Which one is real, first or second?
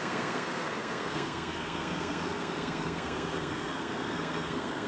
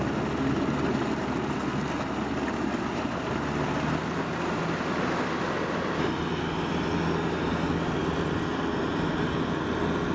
second